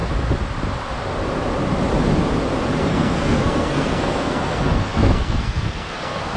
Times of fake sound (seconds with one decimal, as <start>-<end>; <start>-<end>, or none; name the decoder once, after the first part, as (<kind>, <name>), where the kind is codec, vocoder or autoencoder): 2.8-6.4 (codec, SNAC)